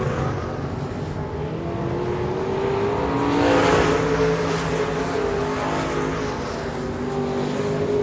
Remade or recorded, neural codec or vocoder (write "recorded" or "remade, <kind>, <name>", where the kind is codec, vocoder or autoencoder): recorded